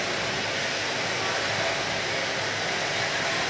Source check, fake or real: real